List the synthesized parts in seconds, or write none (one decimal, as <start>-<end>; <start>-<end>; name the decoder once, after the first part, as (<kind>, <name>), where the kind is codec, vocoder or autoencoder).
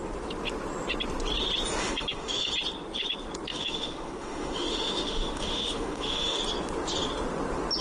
1.8-2.5 (autoencoder, DAC-VAE); 3.5-6.4